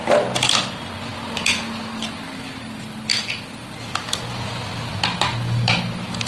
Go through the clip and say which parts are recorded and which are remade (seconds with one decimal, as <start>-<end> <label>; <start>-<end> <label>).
0.0-6.3 recorded